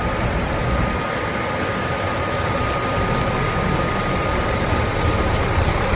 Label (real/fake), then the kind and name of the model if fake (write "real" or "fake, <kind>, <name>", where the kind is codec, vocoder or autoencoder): real